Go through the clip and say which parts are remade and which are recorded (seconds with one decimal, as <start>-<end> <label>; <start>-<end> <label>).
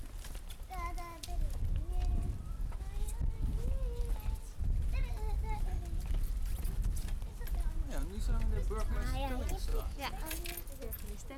0.0-9.7 recorded; 9.7-10.4 remade; 10.4-11.4 recorded